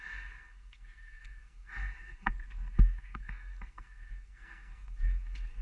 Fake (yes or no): yes